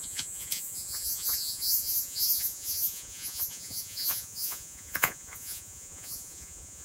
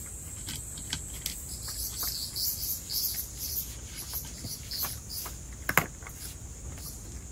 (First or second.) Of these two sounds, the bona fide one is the second